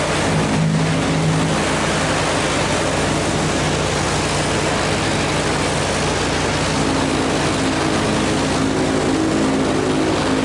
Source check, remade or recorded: recorded